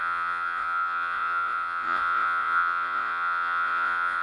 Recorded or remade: remade